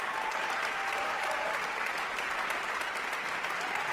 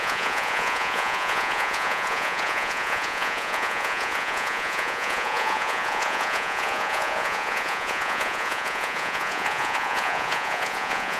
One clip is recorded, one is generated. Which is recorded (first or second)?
first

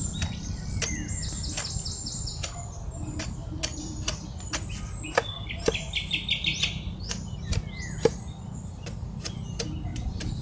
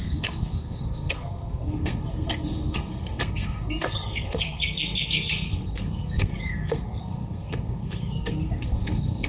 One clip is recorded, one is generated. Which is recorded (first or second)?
first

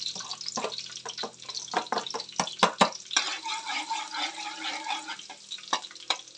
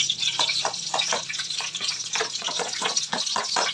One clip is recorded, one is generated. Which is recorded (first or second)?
first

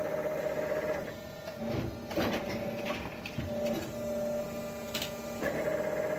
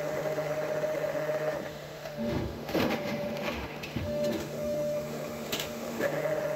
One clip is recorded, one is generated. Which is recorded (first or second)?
first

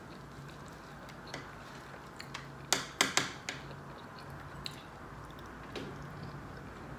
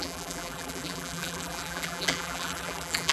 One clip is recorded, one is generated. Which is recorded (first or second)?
first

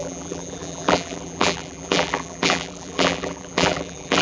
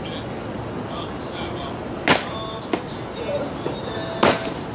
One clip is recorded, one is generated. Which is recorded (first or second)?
second